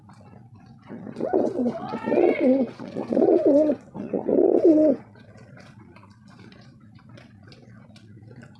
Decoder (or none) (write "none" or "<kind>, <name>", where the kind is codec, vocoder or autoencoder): vocoder, Vocos